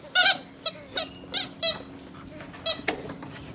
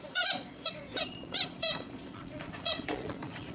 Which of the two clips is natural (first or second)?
first